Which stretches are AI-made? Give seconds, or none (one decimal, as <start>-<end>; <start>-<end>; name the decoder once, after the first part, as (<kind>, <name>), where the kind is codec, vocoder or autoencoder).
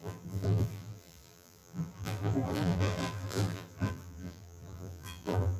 0.0-5.6 (vocoder, BigVGAN v2)